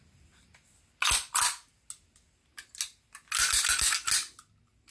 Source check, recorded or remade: recorded